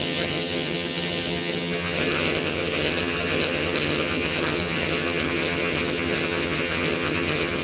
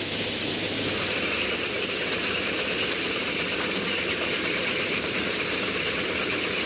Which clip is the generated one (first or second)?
first